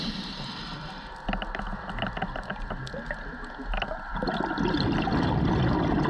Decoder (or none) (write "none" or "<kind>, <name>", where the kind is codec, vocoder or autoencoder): none